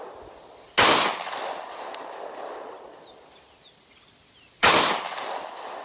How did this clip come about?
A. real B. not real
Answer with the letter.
A